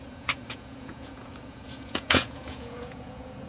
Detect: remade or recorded remade